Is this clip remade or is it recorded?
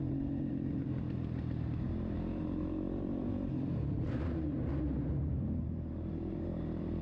remade